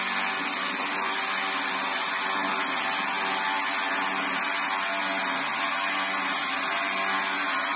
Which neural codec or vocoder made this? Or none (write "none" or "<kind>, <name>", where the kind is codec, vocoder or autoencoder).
none